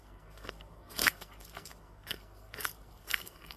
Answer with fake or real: fake